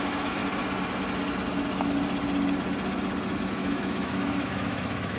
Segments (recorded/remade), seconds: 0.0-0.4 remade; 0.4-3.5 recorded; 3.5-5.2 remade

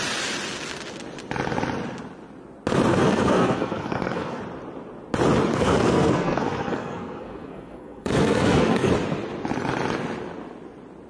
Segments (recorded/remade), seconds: 0.0-2.9 recorded; 2.9-4.4 remade; 4.4-5.5 recorded; 5.5-8.9 remade; 8.9-11.1 recorded

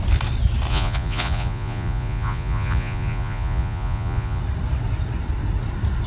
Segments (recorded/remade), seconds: 0.0-0.7 recorded; 0.7-4.4 remade; 4.4-6.1 recorded

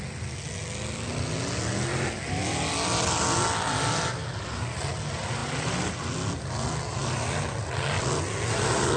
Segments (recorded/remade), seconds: 0.0-9.0 recorded

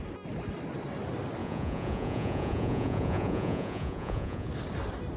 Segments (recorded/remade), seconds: 0.0-1.4 recorded; 1.4-4.5 remade; 4.5-5.2 recorded

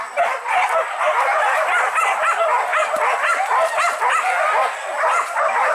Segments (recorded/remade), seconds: 0.0-2.7 recorded; 2.7-4.2 remade; 4.2-5.7 recorded